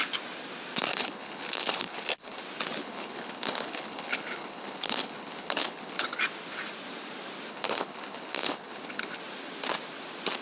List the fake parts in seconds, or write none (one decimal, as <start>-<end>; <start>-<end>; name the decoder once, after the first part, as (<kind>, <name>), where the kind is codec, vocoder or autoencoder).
0.9-2.4 (codec, HILCodec); 2.8-6.2; 7.5-9.2